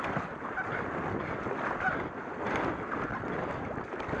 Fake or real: real